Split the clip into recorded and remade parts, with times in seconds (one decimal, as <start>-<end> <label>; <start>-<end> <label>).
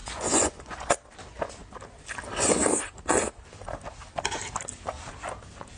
0.0-0.9 remade; 0.9-5.8 recorded